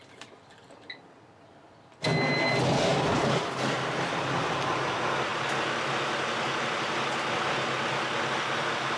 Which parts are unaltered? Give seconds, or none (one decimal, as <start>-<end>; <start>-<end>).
0.0-9.0